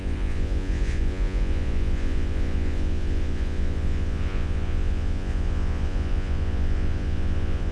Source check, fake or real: fake